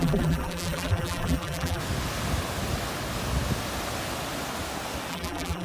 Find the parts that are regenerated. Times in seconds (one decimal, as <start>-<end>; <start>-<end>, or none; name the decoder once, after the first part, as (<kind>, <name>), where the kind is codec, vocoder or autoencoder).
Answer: 0.0-1.8 (vocoder, BigVGAN v2); 5.1-5.6

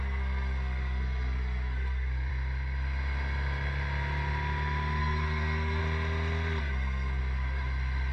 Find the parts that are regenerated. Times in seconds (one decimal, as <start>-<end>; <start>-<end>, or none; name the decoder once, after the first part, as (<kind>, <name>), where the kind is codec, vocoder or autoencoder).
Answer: 0.0-2.3 (codec, SNAC); 5.0-5.8; 6.6-7.2

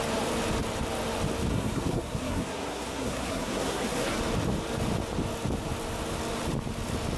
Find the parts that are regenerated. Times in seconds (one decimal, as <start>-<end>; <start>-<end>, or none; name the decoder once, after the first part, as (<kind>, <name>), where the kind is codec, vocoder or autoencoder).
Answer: 1.5-4.2 (codec, SNAC)

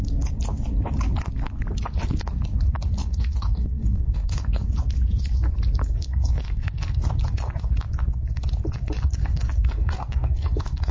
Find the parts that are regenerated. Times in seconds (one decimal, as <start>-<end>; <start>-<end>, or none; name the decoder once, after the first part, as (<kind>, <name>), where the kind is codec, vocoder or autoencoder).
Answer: 3.0-4.6 (codec, SNAC); 5.8-7.1; 9.2-10.9